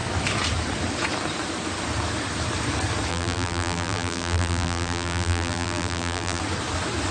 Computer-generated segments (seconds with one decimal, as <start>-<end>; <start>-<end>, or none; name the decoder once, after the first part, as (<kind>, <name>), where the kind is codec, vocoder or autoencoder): 3.1-6.4 (vocoder, BigVGAN v2)